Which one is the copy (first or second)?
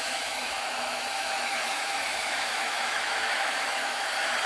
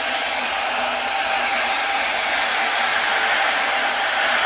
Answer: first